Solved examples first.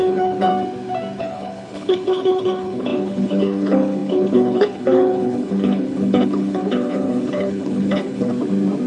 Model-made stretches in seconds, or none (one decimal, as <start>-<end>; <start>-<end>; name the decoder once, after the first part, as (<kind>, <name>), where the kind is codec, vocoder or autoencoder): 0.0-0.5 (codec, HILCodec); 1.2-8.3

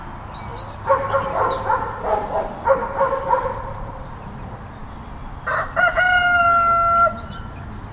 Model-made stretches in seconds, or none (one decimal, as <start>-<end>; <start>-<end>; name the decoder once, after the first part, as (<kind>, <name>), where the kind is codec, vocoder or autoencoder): none

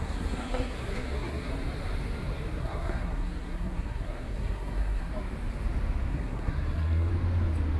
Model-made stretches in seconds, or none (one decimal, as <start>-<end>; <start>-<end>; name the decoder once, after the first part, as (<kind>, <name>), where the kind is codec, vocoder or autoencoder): 0.0-1.5 (codec, SNAC); 2.6-5.1; 6.1-7.1

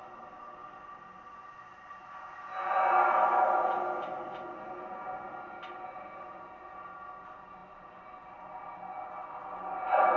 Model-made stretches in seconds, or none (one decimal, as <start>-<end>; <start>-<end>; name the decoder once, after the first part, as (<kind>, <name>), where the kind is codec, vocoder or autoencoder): none

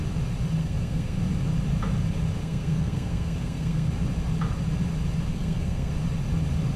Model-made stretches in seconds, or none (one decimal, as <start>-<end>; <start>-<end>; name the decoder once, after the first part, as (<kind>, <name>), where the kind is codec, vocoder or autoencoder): 0.6-1.2 (codec, SNAC); 2.4-3.9; 5.3-5.9

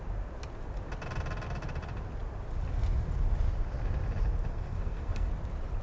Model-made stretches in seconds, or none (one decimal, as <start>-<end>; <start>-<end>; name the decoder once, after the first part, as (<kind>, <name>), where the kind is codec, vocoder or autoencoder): 4.5-5.3 (codec, SNAC)

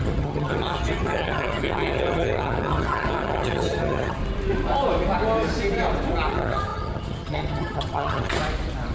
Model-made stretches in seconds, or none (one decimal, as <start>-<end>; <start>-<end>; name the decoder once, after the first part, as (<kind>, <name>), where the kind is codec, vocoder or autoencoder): 0.0-4.2 (vocoder, HiFi-GAN); 6.3-8.4